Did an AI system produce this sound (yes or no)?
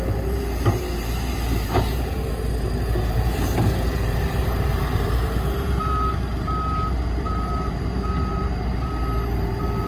yes